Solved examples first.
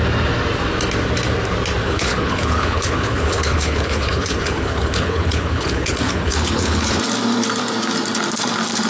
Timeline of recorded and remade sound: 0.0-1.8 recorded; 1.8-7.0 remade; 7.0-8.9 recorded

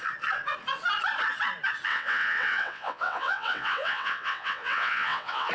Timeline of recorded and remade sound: 0.0-1.9 recorded; 1.9-5.5 remade

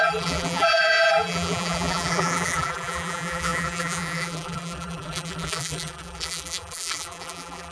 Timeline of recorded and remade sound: 0.0-7.7 remade

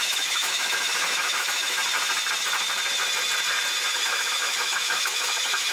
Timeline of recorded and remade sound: 0.0-1.8 remade; 1.8-3.9 recorded; 3.9-5.7 remade

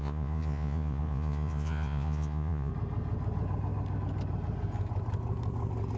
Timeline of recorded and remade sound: 0.0-2.7 remade; 2.7-6.0 recorded